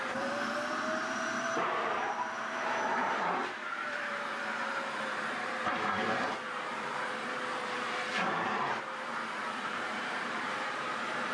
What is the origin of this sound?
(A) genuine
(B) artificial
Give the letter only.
B